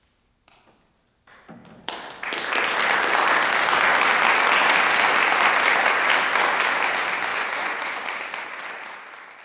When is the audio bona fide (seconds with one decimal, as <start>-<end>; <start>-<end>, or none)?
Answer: 0.0-7.3; 8.0-9.4